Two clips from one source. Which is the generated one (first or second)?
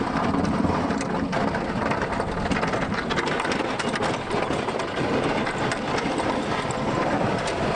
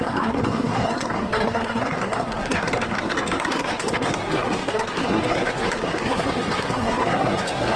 second